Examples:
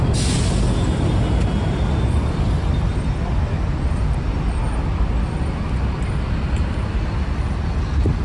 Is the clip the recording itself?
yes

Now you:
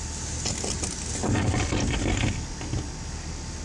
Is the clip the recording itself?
yes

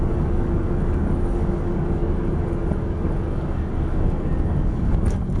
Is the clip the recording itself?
no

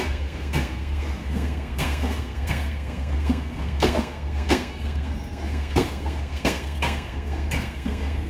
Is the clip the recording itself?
no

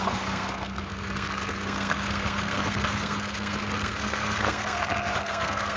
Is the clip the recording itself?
no